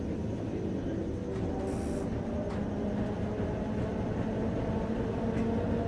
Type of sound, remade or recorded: recorded